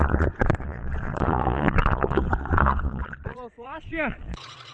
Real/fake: fake